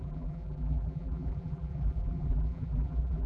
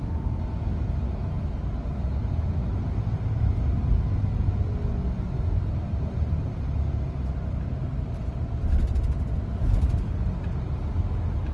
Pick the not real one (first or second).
first